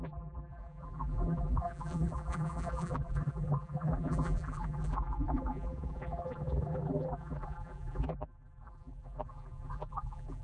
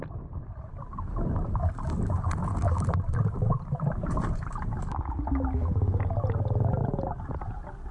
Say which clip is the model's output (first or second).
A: first